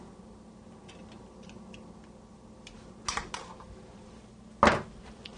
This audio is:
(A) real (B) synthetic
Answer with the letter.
A